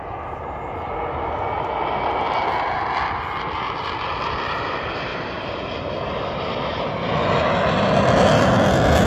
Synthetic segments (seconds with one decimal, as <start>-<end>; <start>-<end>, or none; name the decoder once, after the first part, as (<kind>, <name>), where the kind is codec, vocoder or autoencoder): none